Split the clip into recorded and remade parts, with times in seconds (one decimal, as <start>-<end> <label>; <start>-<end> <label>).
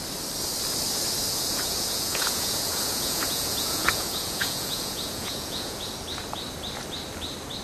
0.0-1.3 recorded; 1.3-5.9 remade; 5.9-7.6 recorded